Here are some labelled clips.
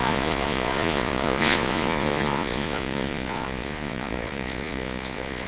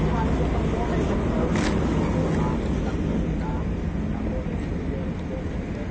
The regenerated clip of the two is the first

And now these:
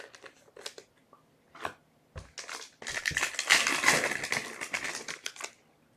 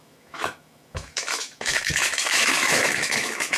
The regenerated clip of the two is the second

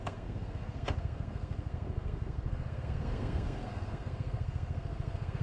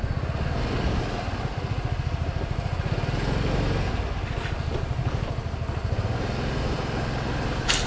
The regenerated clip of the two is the first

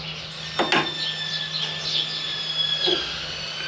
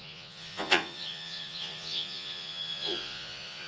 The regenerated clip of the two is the second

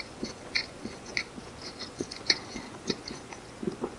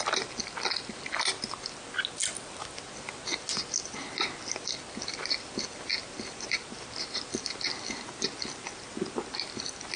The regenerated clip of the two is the first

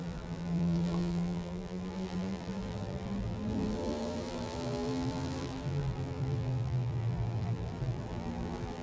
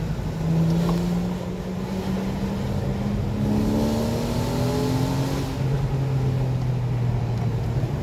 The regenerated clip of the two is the first